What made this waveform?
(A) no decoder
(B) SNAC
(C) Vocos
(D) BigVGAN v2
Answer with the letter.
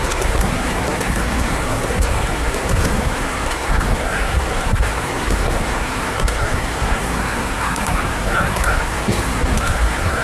B